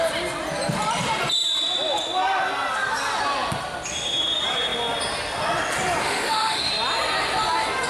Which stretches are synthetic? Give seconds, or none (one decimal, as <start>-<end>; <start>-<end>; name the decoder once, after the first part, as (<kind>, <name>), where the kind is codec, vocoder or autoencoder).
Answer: 6.0-6.7 (autoencoder, DAC-VAE)